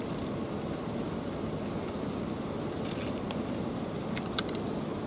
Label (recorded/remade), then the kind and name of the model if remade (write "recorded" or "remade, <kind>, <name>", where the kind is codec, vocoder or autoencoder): recorded